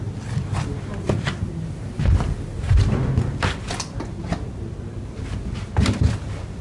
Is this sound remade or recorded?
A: recorded